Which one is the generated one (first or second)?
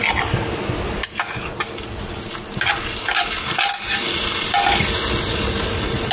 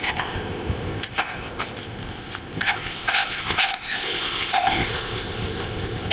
second